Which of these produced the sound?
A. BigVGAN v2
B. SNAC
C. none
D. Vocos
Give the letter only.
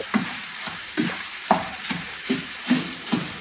A